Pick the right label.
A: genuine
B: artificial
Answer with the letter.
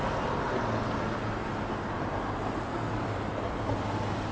A